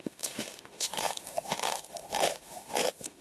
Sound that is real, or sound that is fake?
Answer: fake